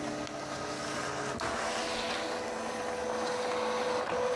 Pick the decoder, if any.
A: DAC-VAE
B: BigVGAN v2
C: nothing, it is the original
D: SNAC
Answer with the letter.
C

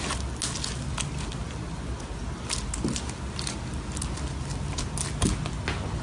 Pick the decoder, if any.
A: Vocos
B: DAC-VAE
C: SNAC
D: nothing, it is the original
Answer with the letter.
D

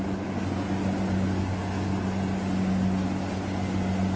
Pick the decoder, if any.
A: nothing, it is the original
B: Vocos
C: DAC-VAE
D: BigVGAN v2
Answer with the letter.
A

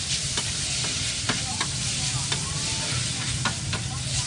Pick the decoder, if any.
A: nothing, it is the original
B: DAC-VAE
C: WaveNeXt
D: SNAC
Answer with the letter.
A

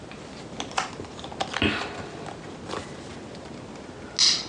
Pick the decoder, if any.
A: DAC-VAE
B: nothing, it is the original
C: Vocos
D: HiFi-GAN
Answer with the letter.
B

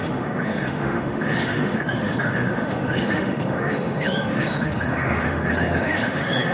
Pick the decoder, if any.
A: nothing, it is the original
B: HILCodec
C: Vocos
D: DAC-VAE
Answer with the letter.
D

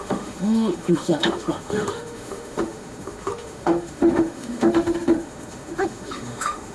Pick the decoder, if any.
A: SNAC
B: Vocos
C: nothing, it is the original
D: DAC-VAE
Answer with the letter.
D